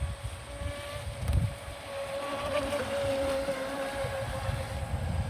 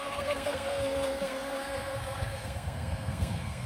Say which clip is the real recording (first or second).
first